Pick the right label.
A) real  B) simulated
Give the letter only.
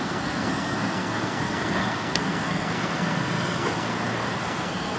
B